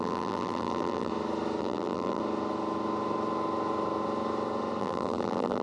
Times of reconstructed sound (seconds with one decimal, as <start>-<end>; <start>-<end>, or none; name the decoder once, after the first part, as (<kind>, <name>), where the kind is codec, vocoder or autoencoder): 0.0-1.1 (vocoder, BigVGAN v2); 1.6-2.2; 4.8-5.6